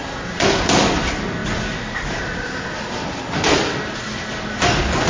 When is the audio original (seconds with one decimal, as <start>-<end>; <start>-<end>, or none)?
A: 0.0-5.1